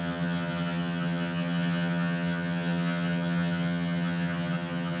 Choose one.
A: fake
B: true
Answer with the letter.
A